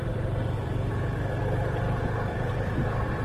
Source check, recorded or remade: remade